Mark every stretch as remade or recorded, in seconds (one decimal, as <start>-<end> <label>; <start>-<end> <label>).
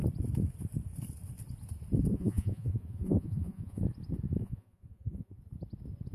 0.0-2.1 recorded; 2.1-3.8 remade; 3.8-4.4 recorded; 4.4-5.4 remade; 5.4-6.1 recorded